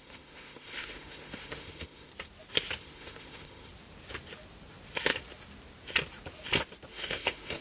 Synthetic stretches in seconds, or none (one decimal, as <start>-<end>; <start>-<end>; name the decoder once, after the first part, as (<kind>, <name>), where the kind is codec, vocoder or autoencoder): 0.0-2.1 (autoencoder, DAC-VAE); 2.8-3.7; 6.9-7.6